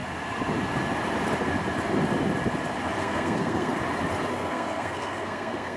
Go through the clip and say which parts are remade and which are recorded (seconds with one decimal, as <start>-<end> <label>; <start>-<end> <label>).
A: 0.0-3.0 recorded; 3.0-3.8 remade; 3.8-4.3 recorded; 4.3-5.8 remade